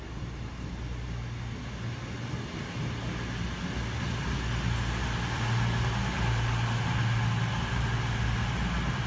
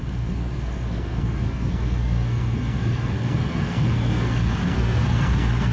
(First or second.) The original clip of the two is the first